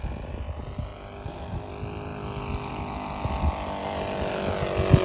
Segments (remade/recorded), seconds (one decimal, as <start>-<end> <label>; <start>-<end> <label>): 0.0-3.8 recorded; 3.8-4.6 remade; 4.6-5.0 recorded

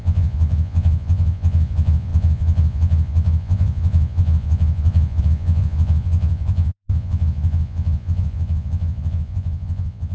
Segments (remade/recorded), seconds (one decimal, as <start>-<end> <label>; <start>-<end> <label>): 0.0-10.1 remade